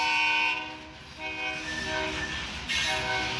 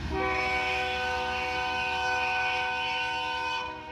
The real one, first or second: first